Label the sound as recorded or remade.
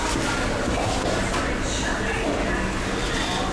recorded